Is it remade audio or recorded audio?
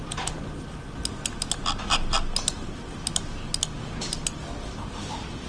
recorded